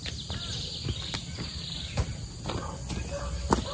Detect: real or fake real